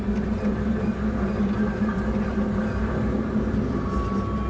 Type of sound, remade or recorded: recorded